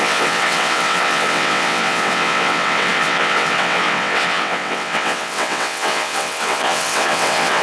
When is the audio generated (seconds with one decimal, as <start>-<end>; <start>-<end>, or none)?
0.0-7.6

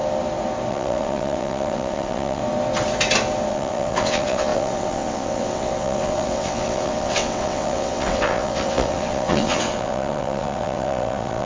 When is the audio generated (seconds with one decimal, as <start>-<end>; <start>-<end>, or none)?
0.7-2.4; 3.5-11.5

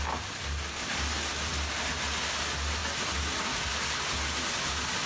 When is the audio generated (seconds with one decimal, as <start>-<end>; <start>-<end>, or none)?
none

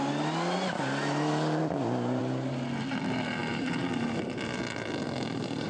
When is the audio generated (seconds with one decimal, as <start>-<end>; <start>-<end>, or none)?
none

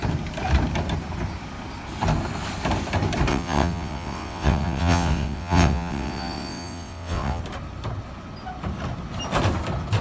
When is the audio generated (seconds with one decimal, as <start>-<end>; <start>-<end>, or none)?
3.3-7.4

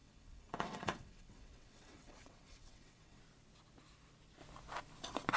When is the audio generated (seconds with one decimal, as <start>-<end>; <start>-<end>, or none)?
0.0-3.2